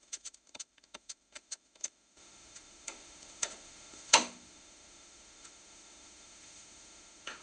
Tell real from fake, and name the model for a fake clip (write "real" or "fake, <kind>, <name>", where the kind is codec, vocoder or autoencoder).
fake, autoencoder, DAC-VAE